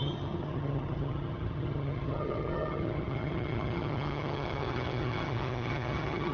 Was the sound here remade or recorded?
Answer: remade